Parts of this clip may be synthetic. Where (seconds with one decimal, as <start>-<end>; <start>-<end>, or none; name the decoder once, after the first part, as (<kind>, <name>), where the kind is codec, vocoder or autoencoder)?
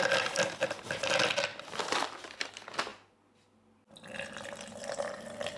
1.5-2.5 (vocoder, BigVGAN v2)